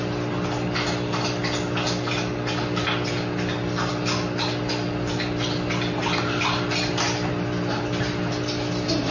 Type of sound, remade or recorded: recorded